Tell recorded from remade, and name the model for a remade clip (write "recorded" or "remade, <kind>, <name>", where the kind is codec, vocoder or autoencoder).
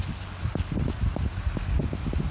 recorded